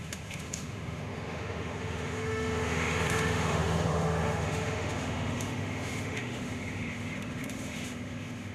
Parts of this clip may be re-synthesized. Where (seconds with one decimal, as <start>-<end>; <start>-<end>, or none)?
0.0-8.5